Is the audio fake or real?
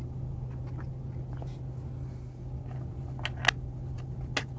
real